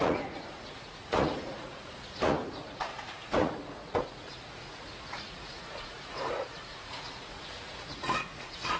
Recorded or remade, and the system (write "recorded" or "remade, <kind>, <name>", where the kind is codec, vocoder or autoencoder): remade, vocoder, Vocos